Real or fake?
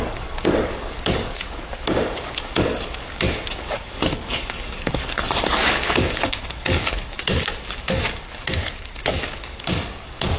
fake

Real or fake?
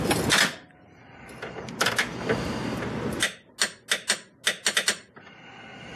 real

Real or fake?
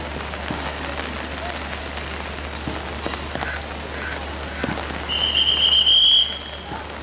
real